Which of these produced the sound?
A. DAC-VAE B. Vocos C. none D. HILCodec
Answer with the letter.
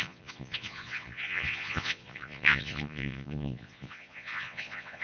B